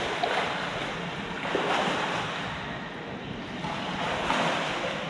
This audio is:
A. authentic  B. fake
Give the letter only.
A